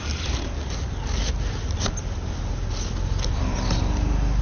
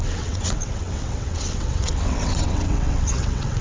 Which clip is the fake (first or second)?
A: second